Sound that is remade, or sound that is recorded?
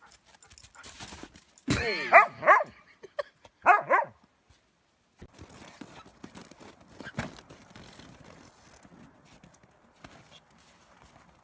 recorded